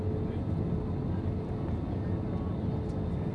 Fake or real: real